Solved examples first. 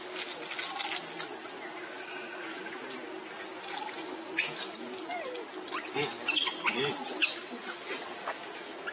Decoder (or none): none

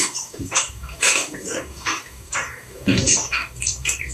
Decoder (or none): codec, DAC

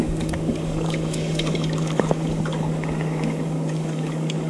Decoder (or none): codec, DAC